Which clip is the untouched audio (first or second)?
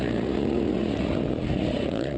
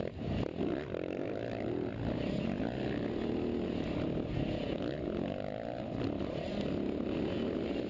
second